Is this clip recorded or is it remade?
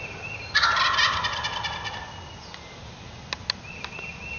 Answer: recorded